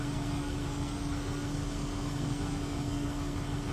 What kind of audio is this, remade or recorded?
remade